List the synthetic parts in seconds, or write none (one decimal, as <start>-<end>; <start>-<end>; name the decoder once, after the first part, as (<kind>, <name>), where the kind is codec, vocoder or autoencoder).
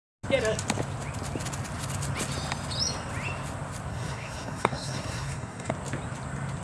3.9-5.7 (codec, SNAC)